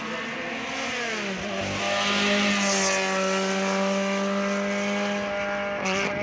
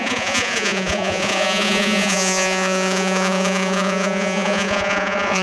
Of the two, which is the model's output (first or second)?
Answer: second